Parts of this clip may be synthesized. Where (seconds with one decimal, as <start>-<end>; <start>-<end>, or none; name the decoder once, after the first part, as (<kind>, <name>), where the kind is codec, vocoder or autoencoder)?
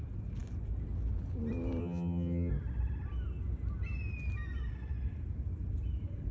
1.8-2.5 (vocoder, HiFi-GAN)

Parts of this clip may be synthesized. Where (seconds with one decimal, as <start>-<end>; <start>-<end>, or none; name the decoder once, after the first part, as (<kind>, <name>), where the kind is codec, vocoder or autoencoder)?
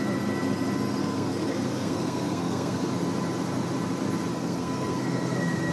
1.0-2.9 (codec, SNAC); 4.3-5.7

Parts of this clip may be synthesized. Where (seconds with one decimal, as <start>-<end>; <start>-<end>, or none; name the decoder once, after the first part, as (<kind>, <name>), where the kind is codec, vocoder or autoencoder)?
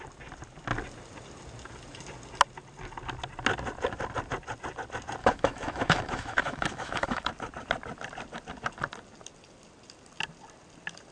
5.2-7.3 (autoencoder, DAC-VAE)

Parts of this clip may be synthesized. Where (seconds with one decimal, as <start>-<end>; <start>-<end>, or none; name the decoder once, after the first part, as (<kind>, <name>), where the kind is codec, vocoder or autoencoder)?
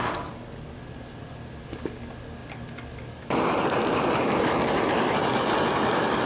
none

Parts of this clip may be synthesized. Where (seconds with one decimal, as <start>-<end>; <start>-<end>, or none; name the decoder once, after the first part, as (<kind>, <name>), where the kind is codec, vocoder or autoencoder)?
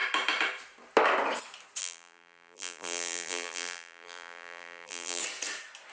1.8-5.2 (vocoder, BigVGAN v2)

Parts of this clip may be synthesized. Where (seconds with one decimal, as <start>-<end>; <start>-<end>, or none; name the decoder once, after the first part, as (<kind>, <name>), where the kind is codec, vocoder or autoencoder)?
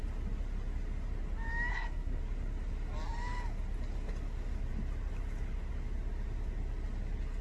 1.7-2.2 (codec, SNAC)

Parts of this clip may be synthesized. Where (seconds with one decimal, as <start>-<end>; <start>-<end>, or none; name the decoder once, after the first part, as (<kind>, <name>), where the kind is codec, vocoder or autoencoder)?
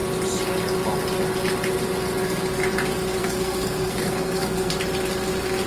3.2-4.7 (codec, SNAC)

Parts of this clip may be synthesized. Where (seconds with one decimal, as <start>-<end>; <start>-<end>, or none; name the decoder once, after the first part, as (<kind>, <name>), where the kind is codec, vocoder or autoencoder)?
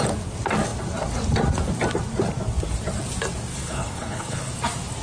3.5-4.5 (codec, HILCodec)